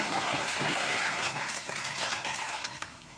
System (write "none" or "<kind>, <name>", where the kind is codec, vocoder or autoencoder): codec, SNAC